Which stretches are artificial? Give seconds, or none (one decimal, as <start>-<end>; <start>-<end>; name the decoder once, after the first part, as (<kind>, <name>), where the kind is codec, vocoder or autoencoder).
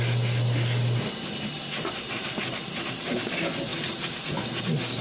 none